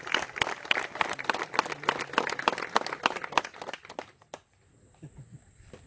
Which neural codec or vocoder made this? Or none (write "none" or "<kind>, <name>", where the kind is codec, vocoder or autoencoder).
none